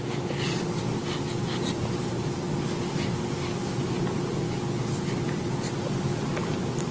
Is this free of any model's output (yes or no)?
yes